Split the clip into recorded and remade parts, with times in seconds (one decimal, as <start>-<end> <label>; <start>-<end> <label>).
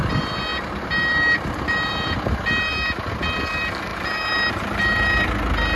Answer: 0.0-5.8 recorded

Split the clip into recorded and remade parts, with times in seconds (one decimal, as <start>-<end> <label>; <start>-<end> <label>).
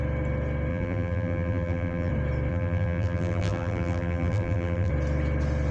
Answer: 0.0-0.7 recorded; 0.7-2.1 remade; 2.1-2.5 recorded; 2.5-4.9 remade; 4.9-5.7 recorded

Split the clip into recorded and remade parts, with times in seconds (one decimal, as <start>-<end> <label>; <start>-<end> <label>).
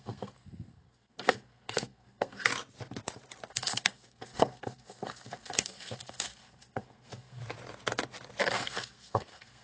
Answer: 0.0-2.5 remade; 2.5-3.5 recorded; 3.5-7.4 remade; 7.4-8.4 recorded; 8.4-9.6 remade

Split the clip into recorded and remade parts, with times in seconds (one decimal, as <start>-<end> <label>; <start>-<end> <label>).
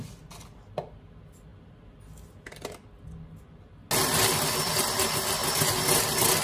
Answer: 0.0-6.4 recorded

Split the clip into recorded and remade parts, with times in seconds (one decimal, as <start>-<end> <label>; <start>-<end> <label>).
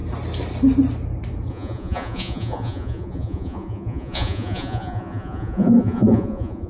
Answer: 0.0-1.5 recorded; 1.5-6.7 remade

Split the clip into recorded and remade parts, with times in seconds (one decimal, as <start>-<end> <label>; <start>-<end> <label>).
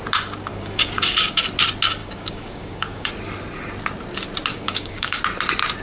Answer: 0.0-0.5 recorded; 0.5-1.4 remade; 1.4-2.0 recorded; 2.0-3.1 remade; 3.1-4.5 recorded; 4.5-5.2 remade; 5.2-5.8 recorded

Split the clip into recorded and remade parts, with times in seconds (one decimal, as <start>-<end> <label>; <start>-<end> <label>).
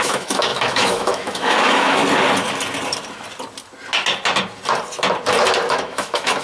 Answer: 0.0-2.0 remade; 2.0-5.7 recorded; 5.7-6.4 remade